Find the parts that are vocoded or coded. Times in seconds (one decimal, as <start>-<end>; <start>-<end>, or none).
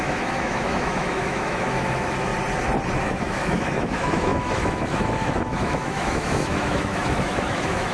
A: 0.0-2.3; 3.0-7.9